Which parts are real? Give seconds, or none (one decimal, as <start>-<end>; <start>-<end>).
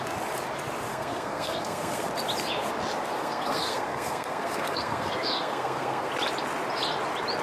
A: 0.0-0.9; 2.1-3.2; 6.1-7.4